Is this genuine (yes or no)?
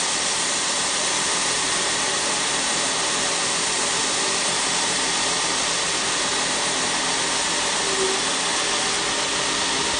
yes